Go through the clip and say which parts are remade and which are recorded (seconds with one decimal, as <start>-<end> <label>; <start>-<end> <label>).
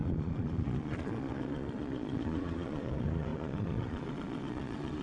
0.0-5.0 remade